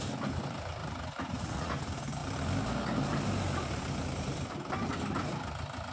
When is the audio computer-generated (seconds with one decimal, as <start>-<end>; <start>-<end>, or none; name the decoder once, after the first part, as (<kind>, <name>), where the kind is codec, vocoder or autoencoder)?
0.8-1.7 (vocoder, Vocos)